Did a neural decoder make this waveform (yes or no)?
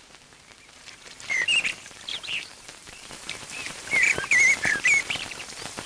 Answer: yes